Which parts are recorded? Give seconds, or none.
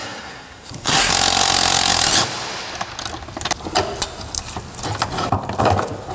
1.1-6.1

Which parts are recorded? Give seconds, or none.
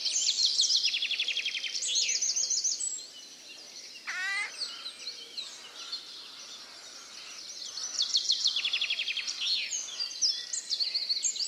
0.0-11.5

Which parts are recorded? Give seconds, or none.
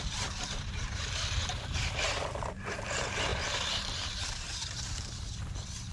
none